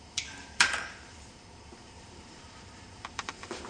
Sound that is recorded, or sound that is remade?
remade